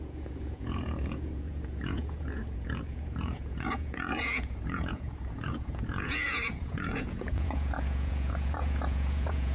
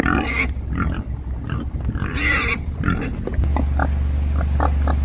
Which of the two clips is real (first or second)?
second